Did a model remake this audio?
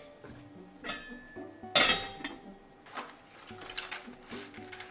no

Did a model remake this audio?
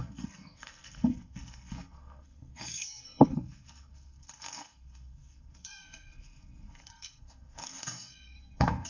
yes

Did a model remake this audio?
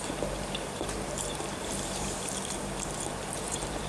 yes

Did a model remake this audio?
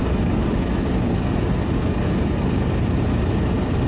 no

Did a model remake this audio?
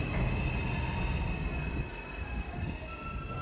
no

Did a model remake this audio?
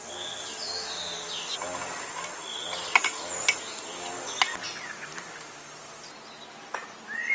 no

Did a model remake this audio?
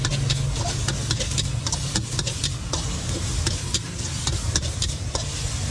no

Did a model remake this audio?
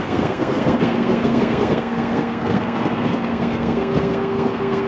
yes